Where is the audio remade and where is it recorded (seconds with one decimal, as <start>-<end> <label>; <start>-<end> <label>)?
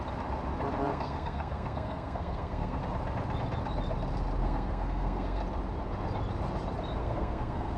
0.0-0.9 recorded; 0.9-2.8 remade; 2.8-4.4 recorded; 4.4-5.4 remade; 5.4-7.0 recorded; 7.0-7.8 remade